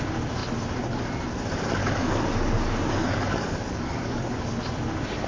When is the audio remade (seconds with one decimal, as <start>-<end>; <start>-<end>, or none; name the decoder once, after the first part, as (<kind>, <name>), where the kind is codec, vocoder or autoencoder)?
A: 1.8-4.6 (codec, DAC)